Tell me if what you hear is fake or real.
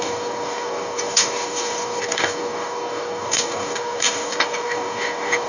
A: fake